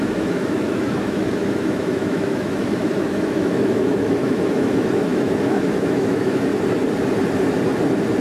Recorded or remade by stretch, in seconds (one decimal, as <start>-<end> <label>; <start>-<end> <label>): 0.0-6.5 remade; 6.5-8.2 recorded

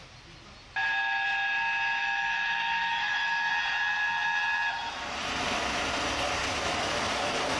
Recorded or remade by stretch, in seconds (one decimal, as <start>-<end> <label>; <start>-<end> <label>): 0.0-2.0 recorded; 2.0-3.5 remade; 3.5-7.6 recorded

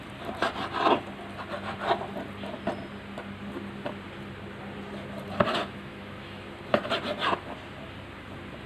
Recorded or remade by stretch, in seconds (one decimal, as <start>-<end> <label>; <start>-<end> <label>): 0.0-5.6 recorded; 5.6-6.4 remade; 6.4-8.7 recorded

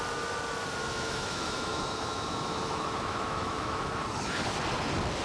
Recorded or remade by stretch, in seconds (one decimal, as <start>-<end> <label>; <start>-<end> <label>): 0.0-0.8 recorded; 0.8-3.9 remade; 3.9-5.2 recorded

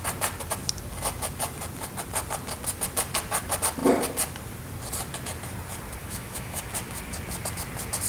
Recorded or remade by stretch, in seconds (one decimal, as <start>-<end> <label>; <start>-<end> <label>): 0.0-6.0 recorded; 6.0-6.6 remade; 6.6-8.1 recorded

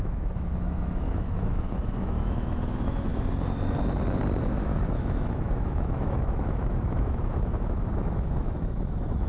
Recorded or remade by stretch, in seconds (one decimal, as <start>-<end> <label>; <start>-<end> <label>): 0.0-3.1 remade; 3.1-4.4 recorded; 4.4-9.3 remade